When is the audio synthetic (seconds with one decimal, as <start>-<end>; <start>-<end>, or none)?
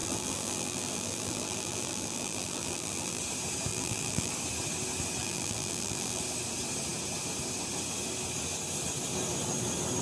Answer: 0.0-3.2; 3.7-4.3; 5.2-6.2